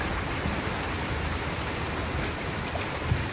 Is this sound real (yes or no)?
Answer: yes